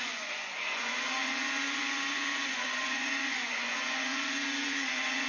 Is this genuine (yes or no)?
no